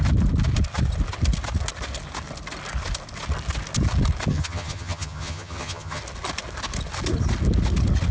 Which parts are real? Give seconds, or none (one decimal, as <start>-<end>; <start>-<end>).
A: 0.0-4.3; 6.0-8.1

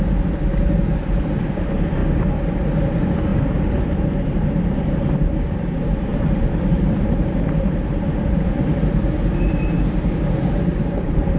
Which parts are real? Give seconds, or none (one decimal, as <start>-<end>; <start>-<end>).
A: 2.0-2.9

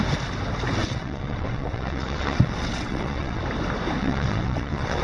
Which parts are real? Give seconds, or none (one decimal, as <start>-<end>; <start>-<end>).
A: 0.0-0.8; 3.4-4.0

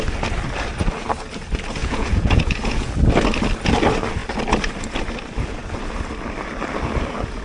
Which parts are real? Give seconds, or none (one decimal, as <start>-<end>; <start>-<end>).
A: 0.0-1.8; 2.9-7.4

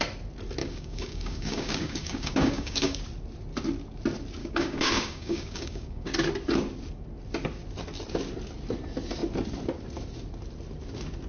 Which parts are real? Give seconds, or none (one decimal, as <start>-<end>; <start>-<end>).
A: 0.0-0.6; 3.0-4.4; 6.1-11.3

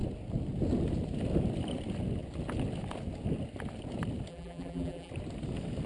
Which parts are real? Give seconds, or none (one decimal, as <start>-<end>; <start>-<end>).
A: 0.0-4.3; 5.1-5.9